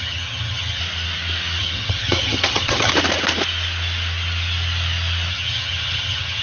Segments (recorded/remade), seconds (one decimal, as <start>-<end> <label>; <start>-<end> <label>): 0.0-0.8 remade; 0.8-1.6 recorded; 1.6-2.9 remade; 2.9-5.3 recorded; 5.3-6.4 remade